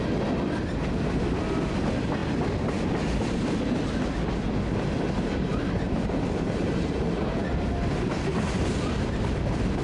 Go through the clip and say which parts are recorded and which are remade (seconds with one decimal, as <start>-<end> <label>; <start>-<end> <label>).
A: 0.0-5.5 recorded; 5.5-7.7 remade; 7.7-9.8 recorded